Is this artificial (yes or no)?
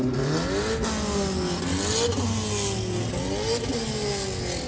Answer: no